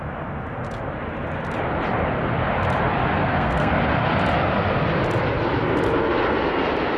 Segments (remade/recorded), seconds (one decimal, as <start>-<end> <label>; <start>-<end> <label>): 0.0-3.2 recorded; 3.2-3.7 remade; 3.7-7.0 recorded